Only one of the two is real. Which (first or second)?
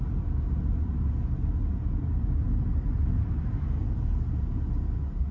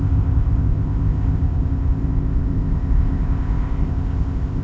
first